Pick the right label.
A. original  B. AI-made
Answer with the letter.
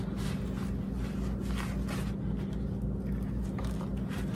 A